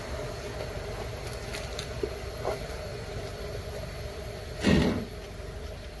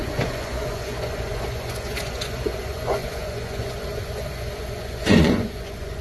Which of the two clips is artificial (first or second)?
second